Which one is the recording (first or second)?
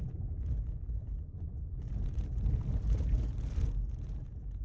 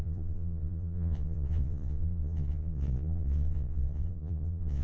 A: first